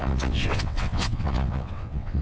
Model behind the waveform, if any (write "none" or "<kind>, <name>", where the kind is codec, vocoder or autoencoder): vocoder, WaveNeXt